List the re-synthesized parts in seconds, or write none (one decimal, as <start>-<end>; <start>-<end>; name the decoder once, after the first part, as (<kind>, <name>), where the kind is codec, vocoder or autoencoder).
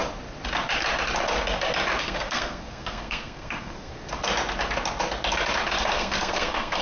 2.0-3.9 (codec, SNAC); 5.7-6.8